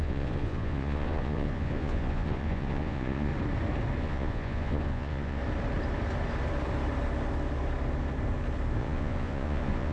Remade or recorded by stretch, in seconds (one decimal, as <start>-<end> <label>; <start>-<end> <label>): 0.0-3.3 remade; 3.3-4.0 recorded; 4.0-5.4 remade; 5.4-8.8 recorded; 8.8-9.9 remade